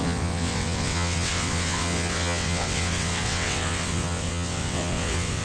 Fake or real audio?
fake